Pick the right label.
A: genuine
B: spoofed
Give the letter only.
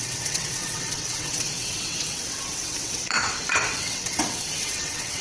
B